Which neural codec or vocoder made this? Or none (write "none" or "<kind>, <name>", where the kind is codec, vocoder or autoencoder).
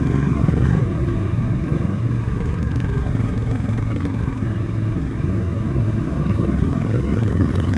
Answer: codec, SNAC